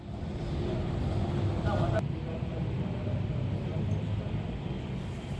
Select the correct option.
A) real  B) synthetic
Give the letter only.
A